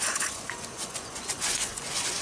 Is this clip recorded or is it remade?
remade